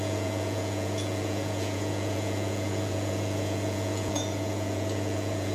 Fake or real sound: fake